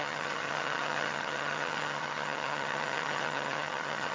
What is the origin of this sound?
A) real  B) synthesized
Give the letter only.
B